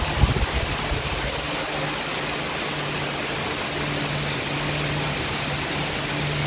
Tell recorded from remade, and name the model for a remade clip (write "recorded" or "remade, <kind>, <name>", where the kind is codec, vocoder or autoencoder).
recorded